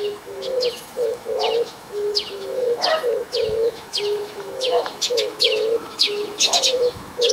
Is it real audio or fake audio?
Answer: fake